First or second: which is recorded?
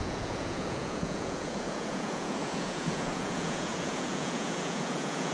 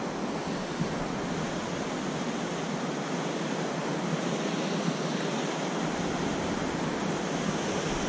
second